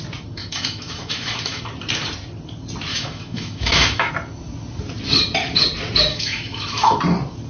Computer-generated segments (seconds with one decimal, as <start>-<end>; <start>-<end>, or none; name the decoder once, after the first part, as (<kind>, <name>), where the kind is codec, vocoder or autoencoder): 0.4-1.6 (autoencoder, DAC-VAE); 2.9-4.1; 6.1-7.0